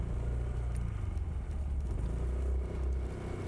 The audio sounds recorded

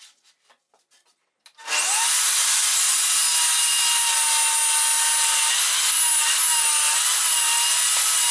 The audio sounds recorded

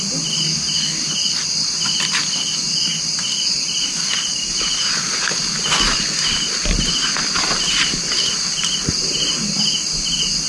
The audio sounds recorded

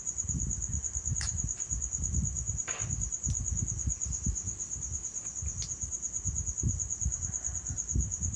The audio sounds recorded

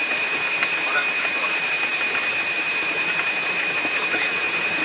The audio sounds recorded